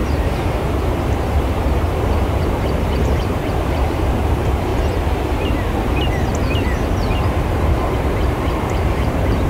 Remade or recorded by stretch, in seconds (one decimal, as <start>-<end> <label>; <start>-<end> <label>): 0.0-4.7 remade; 4.7-7.7 recorded; 7.7-9.5 remade

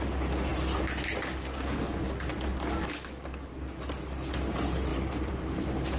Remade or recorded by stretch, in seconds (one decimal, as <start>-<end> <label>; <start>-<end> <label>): 0.0-4.9 recorded; 4.9-6.0 remade